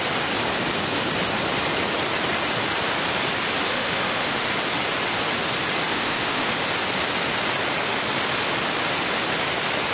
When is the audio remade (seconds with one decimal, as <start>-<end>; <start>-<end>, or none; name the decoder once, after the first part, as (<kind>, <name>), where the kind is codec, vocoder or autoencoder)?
3.7-4.5 (autoencoder, DAC-VAE); 5.9-6.5

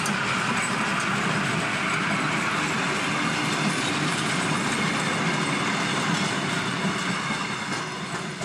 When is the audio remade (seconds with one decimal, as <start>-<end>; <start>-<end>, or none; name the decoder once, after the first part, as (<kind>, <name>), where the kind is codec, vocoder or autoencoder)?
none